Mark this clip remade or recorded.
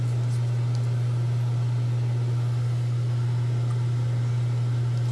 recorded